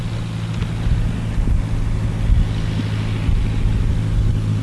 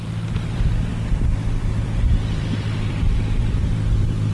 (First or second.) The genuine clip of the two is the first